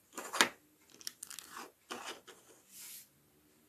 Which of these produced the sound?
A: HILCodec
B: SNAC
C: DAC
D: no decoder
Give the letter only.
D